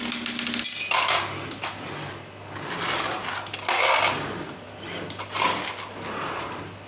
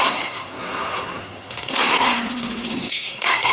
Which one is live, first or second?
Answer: first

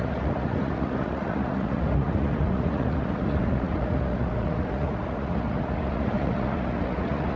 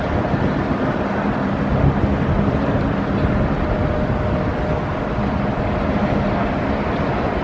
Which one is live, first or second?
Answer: second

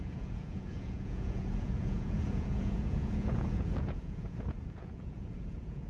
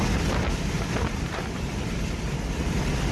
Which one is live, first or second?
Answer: second